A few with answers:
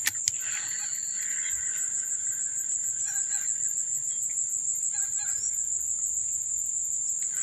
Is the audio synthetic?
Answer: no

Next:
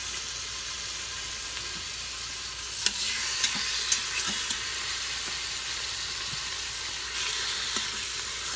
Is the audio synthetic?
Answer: no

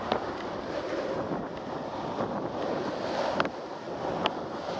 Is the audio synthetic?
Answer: no